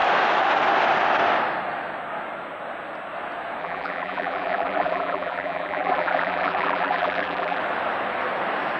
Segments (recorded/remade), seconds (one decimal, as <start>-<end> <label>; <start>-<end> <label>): 0.0-3.6 recorded; 3.6-7.6 remade; 7.6-8.8 recorded